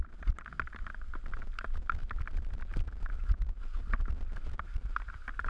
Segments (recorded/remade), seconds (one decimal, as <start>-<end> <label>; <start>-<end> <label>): 0.0-2.0 recorded; 2.0-3.1 remade; 3.1-4.7 recorded; 4.7-5.5 remade